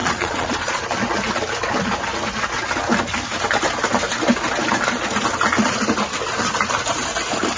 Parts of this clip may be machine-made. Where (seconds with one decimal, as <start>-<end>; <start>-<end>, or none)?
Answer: 0.0-0.8